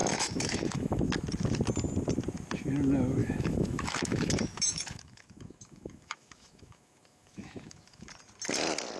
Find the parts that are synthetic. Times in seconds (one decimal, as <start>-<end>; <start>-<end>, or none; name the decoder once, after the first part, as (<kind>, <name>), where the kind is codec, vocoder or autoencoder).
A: 0.0-1.0 (autoencoder, DAC-VAE); 3.2-8.1